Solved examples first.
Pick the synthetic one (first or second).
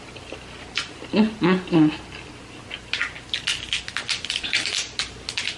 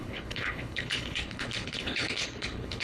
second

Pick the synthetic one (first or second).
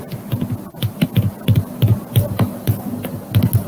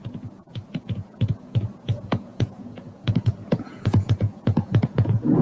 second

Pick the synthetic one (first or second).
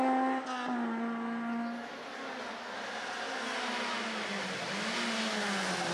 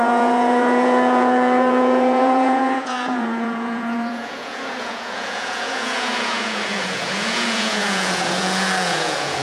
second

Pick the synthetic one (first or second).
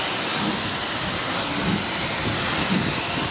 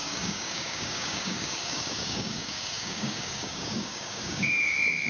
second